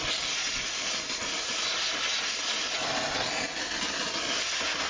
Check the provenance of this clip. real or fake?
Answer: real